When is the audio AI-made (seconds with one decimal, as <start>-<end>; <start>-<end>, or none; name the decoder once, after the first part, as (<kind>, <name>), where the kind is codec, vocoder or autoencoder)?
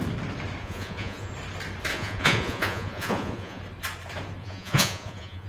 0.6-1.3 (vocoder, Vocos); 1.9-3.6; 4.4-5.5